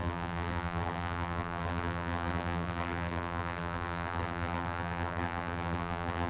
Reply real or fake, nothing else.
fake